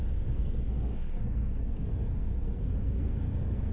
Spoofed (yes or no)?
yes